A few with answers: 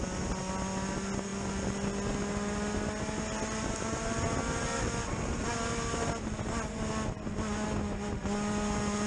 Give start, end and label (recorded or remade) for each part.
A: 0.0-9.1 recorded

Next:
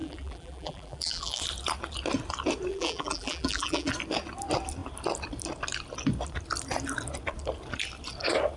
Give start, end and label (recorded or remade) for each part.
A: 0.0-1.4 remade; 1.4-2.7 recorded; 2.7-3.9 remade; 3.9-8.6 recorded

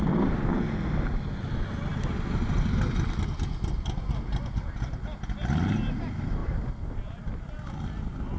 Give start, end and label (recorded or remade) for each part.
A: 0.0-8.4 recorded